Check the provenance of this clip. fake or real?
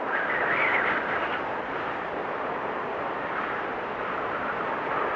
real